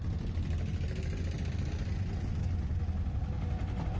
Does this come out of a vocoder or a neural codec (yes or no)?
no